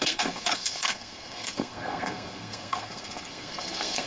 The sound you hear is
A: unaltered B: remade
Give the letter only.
B